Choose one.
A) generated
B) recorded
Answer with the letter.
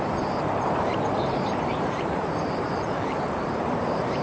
A